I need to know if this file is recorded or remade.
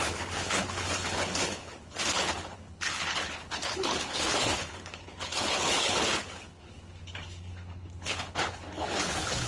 remade